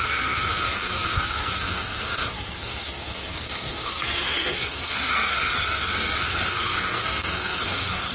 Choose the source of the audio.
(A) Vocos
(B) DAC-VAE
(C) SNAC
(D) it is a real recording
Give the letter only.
C